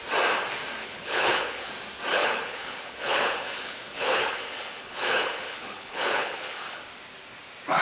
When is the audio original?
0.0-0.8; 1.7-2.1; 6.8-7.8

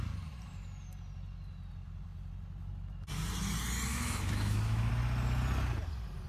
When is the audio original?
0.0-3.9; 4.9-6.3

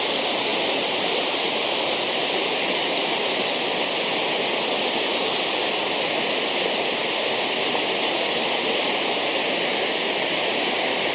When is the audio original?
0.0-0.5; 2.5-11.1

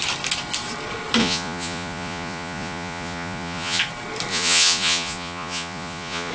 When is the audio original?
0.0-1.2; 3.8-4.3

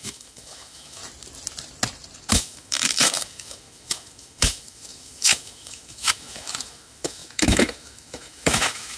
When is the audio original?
1.0-2.3

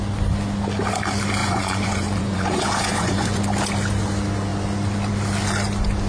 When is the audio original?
0.0-1.4; 3.4-6.1

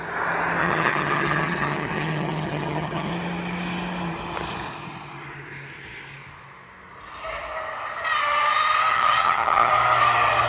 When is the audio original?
0.0-0.6; 3.1-8.9; 9.7-10.5